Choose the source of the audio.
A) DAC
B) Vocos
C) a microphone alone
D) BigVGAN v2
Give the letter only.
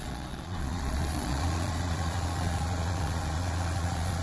B